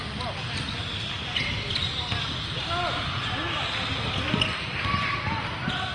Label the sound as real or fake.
real